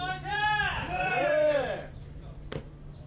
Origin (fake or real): fake